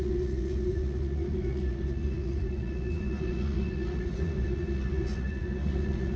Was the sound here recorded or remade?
remade